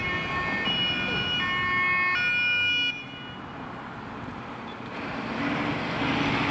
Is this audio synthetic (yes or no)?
no